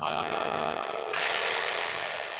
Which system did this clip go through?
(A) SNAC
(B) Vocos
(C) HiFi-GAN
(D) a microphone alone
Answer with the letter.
C